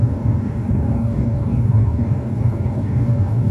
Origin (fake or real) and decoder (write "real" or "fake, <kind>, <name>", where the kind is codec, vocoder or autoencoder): fake, codec, DAC